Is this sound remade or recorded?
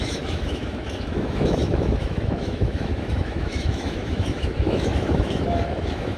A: remade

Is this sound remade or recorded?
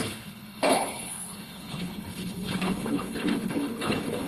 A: remade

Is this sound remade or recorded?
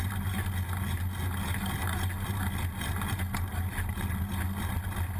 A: recorded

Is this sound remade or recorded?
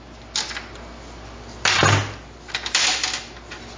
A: recorded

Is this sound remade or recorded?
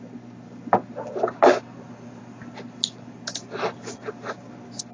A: recorded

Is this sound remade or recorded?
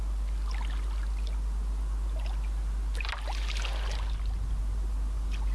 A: recorded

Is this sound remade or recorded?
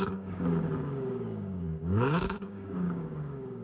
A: remade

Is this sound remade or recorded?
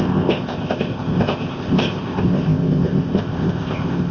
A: remade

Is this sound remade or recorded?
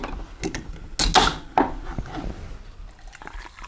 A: recorded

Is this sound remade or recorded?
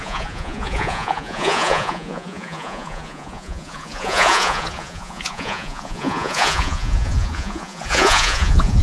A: remade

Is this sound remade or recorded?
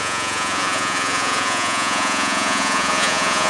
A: remade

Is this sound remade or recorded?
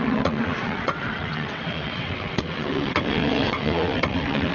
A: remade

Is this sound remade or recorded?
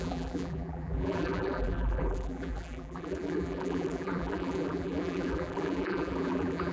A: remade